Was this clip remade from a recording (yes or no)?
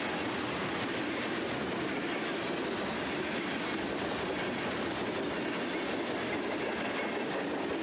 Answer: no